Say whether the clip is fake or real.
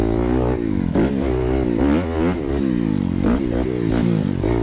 real